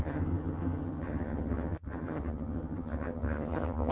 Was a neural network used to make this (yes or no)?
yes